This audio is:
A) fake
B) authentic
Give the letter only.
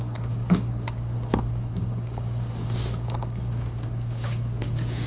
A